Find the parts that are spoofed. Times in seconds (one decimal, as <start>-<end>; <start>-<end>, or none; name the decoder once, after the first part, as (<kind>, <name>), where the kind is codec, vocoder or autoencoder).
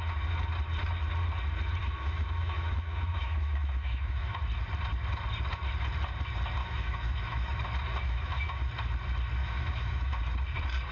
1.8-4.4 (autoencoder, DAC-VAE); 6.6-7.5; 8.0-8.7; 9.4-10.2